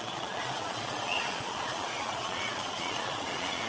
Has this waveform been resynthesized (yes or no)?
yes